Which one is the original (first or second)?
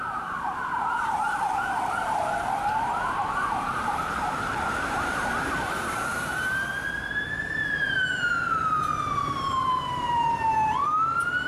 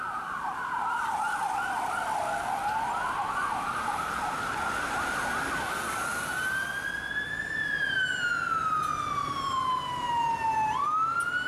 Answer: second